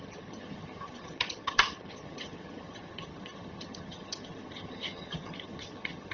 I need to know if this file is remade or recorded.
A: remade